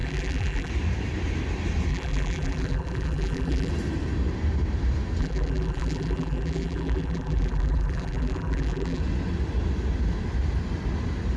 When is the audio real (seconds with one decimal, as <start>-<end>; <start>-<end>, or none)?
0.7-1.9; 3.7-5.2; 9.0-11.4